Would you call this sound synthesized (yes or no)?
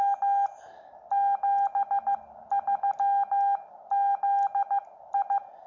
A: no